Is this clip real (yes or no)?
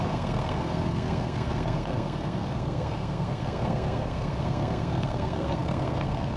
no